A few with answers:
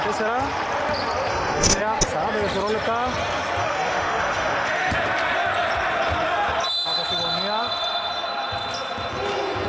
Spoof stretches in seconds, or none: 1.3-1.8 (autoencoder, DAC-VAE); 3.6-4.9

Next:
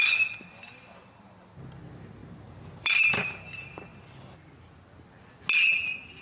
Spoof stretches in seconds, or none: 2.2-3.5 (vocoder, BigVGAN v2)

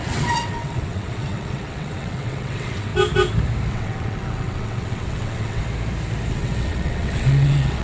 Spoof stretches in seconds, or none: 0.0-2.9 (vocoder, WaveNeXt); 3.7-5.6; 6.3-7.8